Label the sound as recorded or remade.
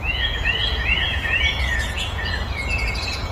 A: remade